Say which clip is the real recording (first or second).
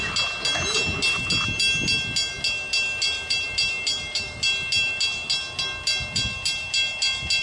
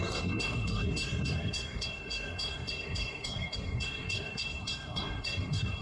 first